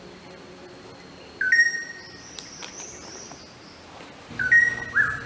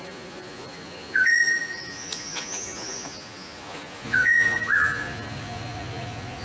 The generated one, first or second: second